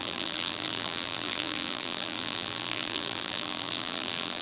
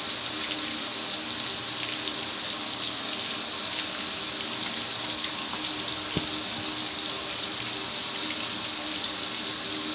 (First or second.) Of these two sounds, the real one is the second